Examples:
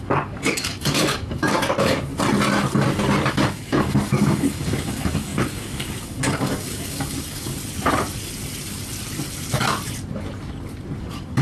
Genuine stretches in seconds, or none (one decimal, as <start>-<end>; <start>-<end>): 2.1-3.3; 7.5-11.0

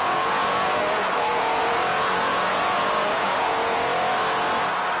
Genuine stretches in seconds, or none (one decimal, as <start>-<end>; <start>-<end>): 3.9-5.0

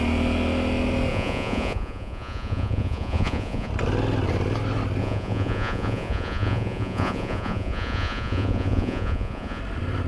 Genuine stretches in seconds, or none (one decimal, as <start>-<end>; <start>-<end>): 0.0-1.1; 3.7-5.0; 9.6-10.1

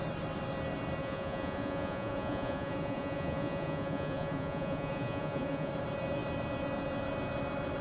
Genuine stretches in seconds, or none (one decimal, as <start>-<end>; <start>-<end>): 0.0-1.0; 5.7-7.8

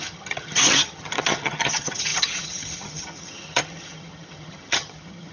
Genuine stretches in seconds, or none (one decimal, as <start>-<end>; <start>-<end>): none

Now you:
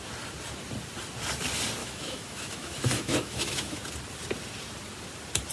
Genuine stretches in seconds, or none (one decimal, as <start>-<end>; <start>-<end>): 0.0-1.8; 3.8-5.5